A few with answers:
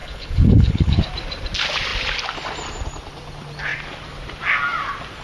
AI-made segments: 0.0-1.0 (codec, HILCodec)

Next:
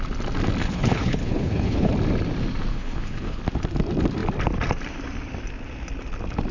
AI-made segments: 0.6-1.9 (codec, HILCodec); 2.7-3.4

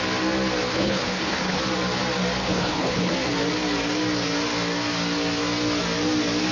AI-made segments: 0.7-1.6 (codec, HILCodec); 2.4-3.1

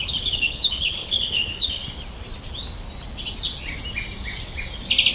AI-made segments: 0.0-1.8 (codec, HILCodec)